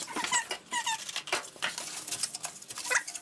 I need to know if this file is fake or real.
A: real